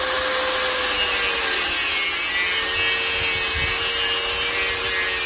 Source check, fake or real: real